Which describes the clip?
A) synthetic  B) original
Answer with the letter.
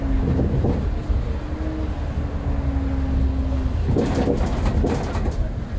B